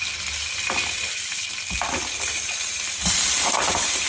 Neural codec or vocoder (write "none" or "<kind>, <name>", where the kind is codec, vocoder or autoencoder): none